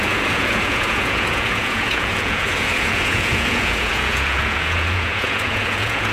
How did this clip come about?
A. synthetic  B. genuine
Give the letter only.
A